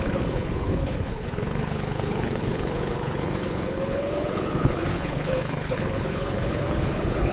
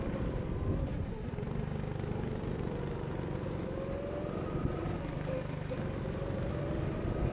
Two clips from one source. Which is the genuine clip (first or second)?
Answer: second